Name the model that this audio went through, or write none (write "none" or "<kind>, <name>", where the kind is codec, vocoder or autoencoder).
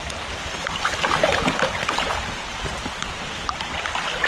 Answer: none